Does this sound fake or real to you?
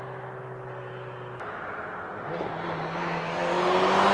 real